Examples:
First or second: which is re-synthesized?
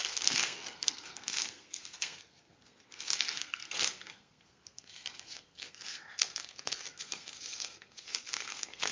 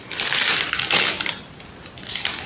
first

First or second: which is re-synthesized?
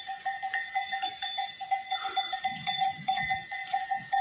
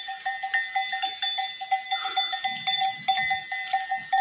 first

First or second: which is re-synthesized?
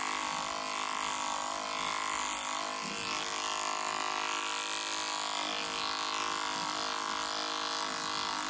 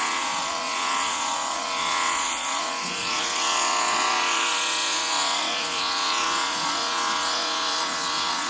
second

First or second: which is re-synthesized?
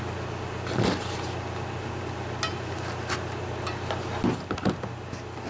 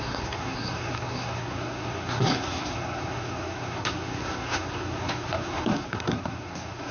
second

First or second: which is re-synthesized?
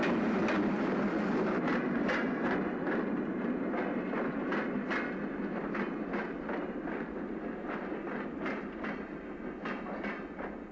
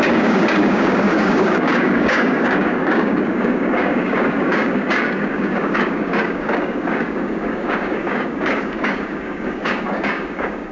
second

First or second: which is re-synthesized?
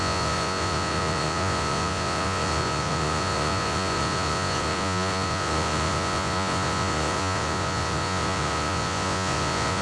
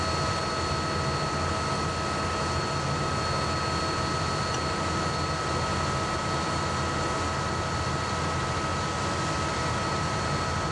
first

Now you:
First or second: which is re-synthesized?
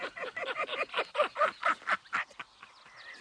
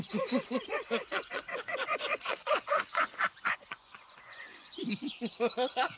second